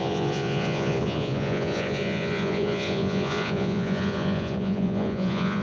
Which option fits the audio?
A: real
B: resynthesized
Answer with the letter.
B